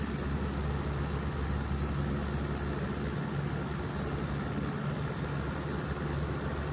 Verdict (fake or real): real